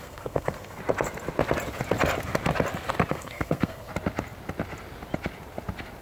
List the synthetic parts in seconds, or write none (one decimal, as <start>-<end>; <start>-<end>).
0.0-0.8; 3.1-3.9